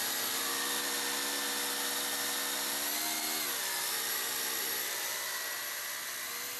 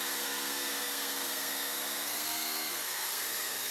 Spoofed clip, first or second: second